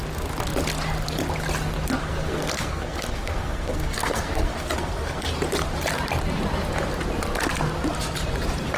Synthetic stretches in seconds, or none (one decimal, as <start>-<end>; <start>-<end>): 2.0-5.3